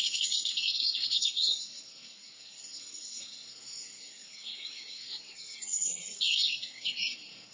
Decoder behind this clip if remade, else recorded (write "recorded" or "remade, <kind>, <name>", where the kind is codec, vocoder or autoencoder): remade, codec, SNAC